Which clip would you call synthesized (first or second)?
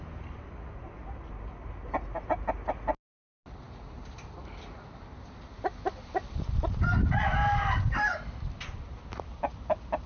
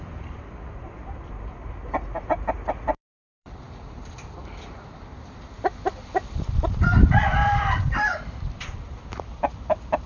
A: second